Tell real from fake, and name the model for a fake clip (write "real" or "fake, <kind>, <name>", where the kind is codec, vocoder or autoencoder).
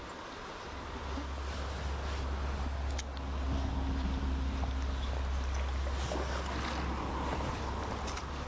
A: real